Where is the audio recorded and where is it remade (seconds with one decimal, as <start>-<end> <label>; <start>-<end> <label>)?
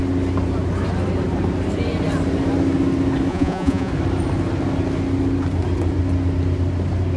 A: 0.0-3.3 recorded; 3.3-3.9 remade; 3.9-7.2 recorded